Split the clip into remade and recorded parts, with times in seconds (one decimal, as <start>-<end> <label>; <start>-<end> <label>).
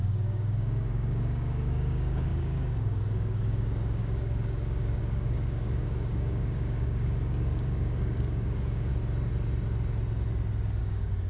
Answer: 0.0-8.9 remade; 8.9-10.8 recorded; 10.8-11.3 remade